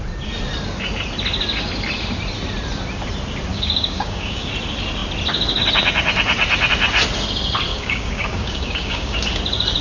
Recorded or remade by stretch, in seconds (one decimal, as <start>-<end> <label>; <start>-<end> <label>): 0.0-3.5 recorded; 3.5-4.5 remade; 4.5-7.7 recorded; 7.7-9.2 remade; 9.2-9.8 recorded